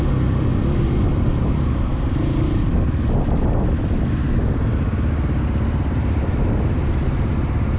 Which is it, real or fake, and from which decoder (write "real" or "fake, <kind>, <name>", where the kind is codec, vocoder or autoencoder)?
real